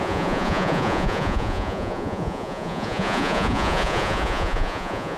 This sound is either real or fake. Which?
fake